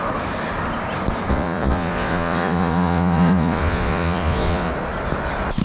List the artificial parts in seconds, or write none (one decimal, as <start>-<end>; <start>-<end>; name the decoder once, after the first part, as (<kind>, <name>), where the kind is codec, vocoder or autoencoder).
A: 1.3-4.7 (vocoder, Vocos)